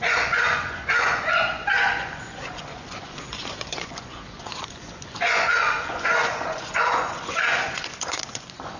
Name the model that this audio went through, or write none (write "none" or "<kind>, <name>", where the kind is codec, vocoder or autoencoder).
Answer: vocoder, Vocos